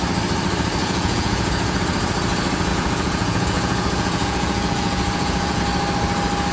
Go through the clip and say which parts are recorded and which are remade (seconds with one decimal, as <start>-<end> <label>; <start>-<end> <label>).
0.0-0.8 recorded; 0.8-1.8 remade; 1.8-2.7 recorded; 2.7-5.6 remade; 5.6-6.5 recorded